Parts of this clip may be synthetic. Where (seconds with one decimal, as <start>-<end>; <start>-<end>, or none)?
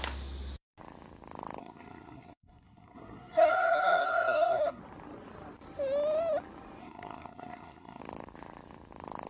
1.6-4.8; 6.8-8.0